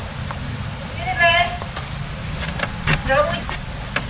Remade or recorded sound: recorded